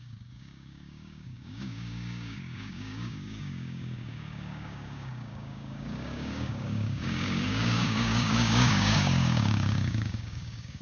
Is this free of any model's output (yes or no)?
no